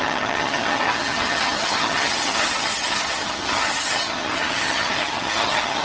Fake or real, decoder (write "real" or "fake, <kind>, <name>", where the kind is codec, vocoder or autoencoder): fake, vocoder, HiFi-GAN